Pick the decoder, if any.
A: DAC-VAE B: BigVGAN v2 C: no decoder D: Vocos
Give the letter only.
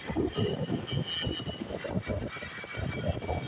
C